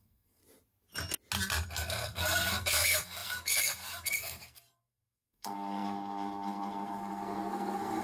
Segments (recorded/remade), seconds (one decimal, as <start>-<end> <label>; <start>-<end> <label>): 0.0-0.4 remade; 0.4-1.7 recorded; 1.7-8.0 remade